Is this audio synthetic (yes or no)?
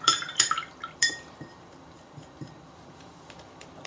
yes